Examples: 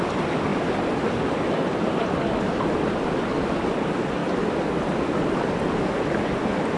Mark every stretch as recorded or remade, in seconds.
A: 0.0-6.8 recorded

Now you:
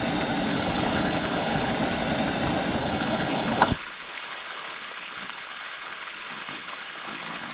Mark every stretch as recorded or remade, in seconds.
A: 0.0-0.5 recorded; 0.5-1.7 remade; 1.7-2.8 recorded; 2.8-7.5 remade

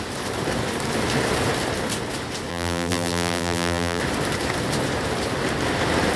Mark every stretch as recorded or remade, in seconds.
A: 0.0-2.5 recorded; 2.5-4.0 remade; 4.0-6.2 recorded

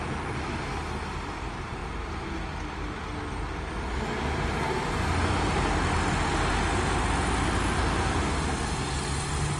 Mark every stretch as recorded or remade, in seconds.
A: 0.0-9.6 recorded

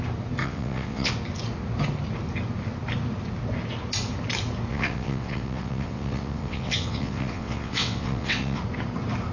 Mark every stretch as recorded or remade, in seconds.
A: 0.0-0.4 recorded; 0.4-1.1 remade; 1.1-4.7 recorded; 4.7-8.6 remade; 8.6-9.3 recorded